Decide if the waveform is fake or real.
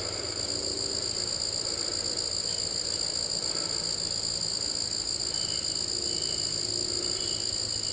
real